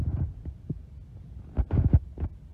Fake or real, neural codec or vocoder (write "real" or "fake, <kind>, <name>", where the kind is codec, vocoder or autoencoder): real